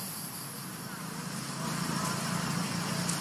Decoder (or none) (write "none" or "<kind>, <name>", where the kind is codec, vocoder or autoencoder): vocoder, BigVGAN v2